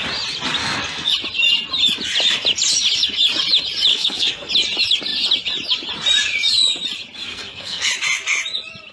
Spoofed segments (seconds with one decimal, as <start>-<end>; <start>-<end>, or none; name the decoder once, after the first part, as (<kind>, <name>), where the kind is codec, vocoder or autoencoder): 0.6-1.1 (codec, SNAC); 3.9-4.5; 7.3-7.9